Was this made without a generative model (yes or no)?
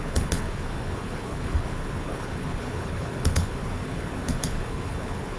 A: no